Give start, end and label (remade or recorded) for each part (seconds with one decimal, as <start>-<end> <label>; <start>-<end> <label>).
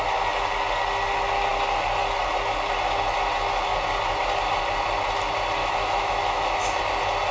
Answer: 0.0-5.6 recorded; 5.6-6.8 remade; 6.8-7.3 recorded